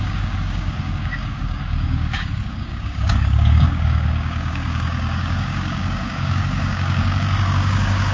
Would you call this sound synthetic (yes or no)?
yes